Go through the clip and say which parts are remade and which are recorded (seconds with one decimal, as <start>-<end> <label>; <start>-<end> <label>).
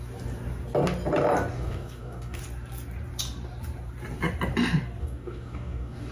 0.0-1.5 recorded; 1.5-2.4 remade; 2.4-5.0 recorded; 5.0-6.1 remade